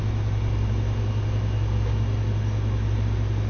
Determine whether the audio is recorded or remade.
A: recorded